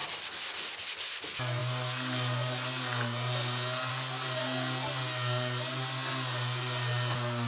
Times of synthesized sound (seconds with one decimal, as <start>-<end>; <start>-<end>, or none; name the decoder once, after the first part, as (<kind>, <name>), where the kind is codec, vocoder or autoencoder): none